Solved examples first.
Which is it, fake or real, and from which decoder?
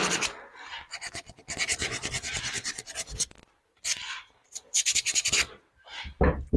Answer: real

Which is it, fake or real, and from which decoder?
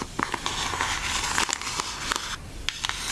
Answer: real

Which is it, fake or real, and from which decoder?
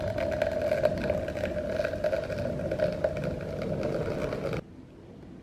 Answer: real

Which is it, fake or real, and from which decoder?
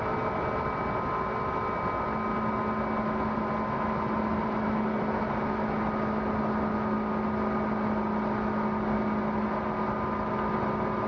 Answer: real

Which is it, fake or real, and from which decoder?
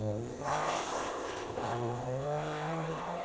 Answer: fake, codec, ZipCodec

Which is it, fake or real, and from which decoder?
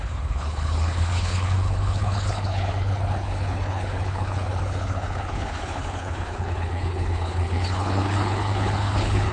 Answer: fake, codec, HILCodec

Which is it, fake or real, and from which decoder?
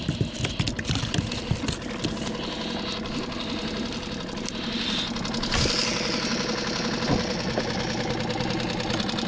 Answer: real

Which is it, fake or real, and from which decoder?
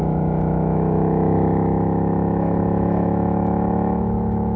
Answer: fake, autoencoder, DAC-VAE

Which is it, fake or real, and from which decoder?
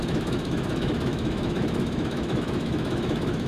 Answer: fake, autoencoder, DAC-VAE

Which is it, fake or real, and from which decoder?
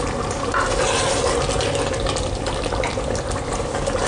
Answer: real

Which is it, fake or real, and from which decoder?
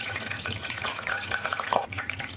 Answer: fake, vocoder, Vocos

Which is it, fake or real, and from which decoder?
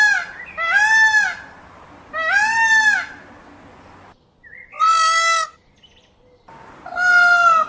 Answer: real